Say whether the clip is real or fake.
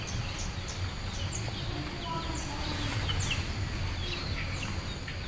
real